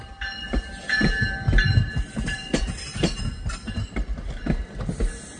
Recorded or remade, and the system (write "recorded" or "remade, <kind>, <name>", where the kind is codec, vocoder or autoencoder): recorded